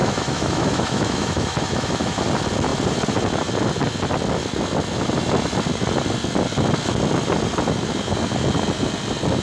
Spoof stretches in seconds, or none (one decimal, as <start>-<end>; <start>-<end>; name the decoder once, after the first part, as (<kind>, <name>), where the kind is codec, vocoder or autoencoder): 0.0-2.2 (autoencoder, DAC-VAE)